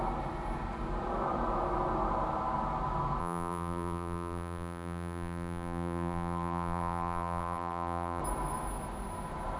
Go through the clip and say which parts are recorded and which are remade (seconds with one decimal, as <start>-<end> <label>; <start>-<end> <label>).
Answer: 0.0-3.2 recorded; 3.2-8.2 remade; 8.2-9.6 recorded